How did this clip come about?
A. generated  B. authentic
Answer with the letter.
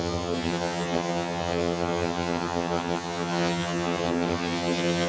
A